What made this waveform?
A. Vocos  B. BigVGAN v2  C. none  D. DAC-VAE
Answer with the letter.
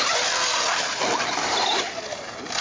C